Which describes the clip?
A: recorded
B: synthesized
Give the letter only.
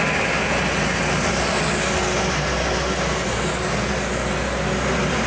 A